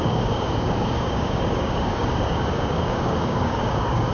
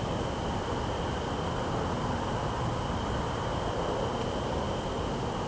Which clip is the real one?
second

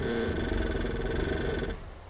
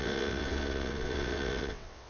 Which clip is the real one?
first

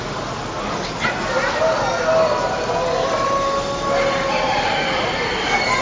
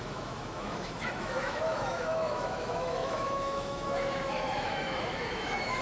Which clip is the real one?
first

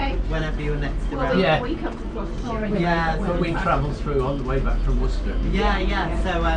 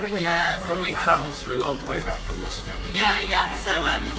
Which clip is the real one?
first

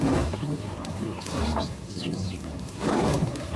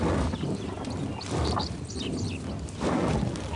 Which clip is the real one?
second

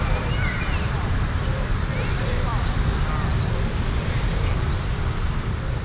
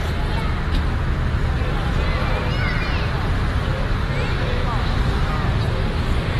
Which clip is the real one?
second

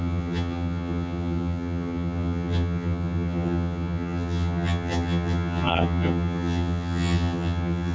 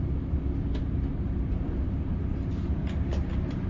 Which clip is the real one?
second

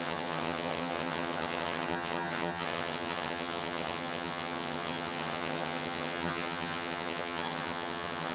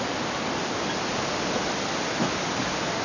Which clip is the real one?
second